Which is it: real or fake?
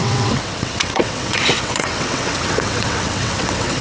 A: fake